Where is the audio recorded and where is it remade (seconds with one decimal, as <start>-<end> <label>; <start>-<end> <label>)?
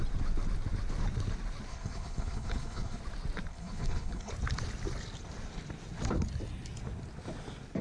0.0-1.7 recorded; 1.7-3.0 remade; 3.0-3.5 recorded; 3.5-4.3 remade; 4.3-7.8 recorded